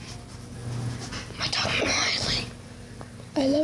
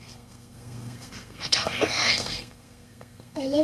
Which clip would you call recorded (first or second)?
first